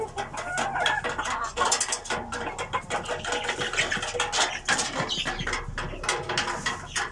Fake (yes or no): no